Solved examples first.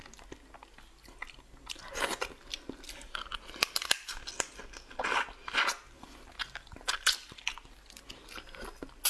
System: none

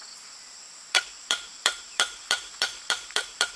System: vocoder, BigVGAN v2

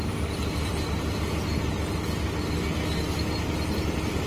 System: none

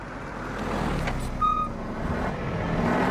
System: none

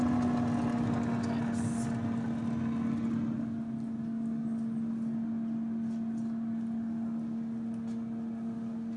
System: none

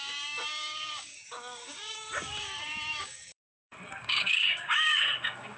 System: codec, DAC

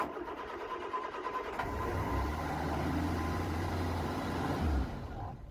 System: vocoder, BigVGAN v2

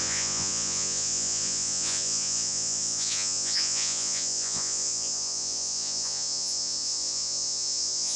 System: vocoder, Vocos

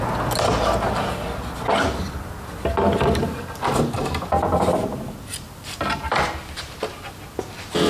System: none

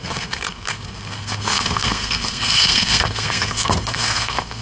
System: codec, SNAC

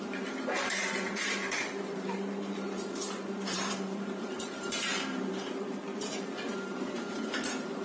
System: vocoder, BigVGAN v2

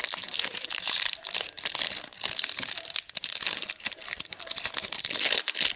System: none